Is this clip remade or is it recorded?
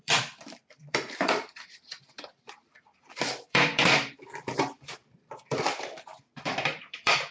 remade